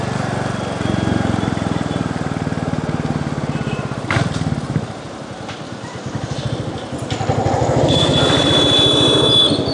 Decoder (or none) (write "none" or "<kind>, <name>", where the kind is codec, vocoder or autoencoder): vocoder, BigVGAN v2